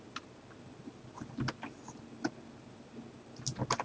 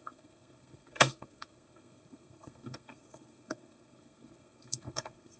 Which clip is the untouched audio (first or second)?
first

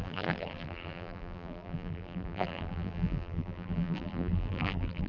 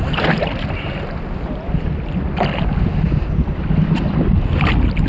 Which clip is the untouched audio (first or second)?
second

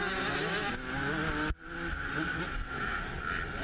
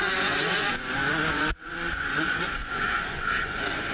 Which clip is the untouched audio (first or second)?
first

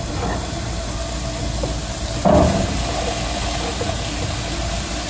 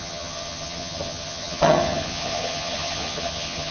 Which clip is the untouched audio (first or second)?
first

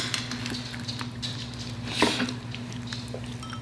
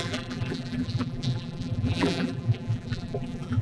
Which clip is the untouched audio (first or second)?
first